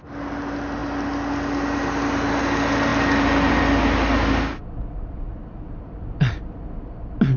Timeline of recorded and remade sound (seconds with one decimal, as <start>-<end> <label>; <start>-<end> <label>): 0.0-0.8 recorded; 0.8-2.4 remade; 2.4-4.6 recorded; 4.6-6.4 remade; 6.4-7.4 recorded